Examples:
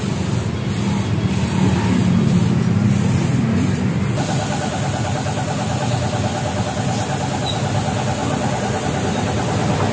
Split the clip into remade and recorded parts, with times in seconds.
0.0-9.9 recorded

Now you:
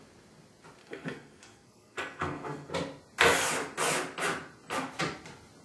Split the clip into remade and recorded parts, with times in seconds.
0.0-0.8 recorded; 0.8-2.7 remade; 2.7-5.6 recorded